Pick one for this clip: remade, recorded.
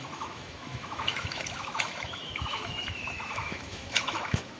remade